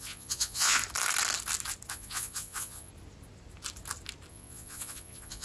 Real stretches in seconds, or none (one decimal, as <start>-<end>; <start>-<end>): 0.8-1.9; 2.9-4.3